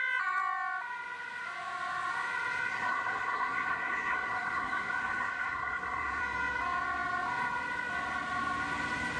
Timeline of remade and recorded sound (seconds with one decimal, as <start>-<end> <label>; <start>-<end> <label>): 0.0-2.7 recorded; 2.7-6.2 remade; 6.2-9.2 recorded